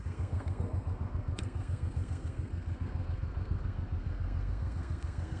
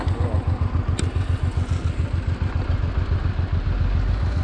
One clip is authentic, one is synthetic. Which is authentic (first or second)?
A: second